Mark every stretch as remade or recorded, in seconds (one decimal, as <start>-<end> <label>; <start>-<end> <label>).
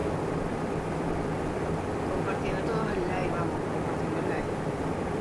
0.0-3.2 remade; 3.2-4.2 recorded; 4.2-5.2 remade